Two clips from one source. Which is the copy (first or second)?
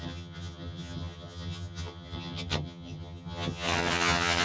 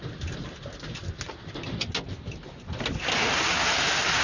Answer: first